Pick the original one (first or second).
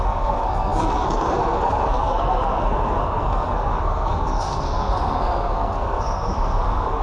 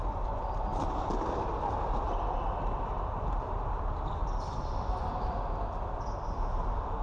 second